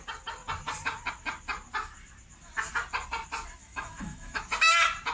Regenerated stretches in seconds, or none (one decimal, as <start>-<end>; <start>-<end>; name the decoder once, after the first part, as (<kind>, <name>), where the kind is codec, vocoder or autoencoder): 3.6-4.4 (autoencoder, DAC-VAE)